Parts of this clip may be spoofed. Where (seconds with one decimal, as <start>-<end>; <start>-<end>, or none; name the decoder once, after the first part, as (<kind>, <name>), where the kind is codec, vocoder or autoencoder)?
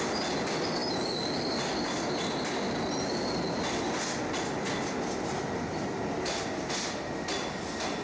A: none